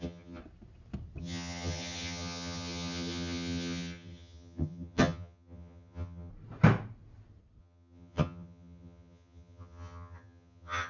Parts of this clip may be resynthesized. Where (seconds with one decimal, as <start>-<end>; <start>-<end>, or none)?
0.0-0.4; 1.2-6.3; 7.6-10.9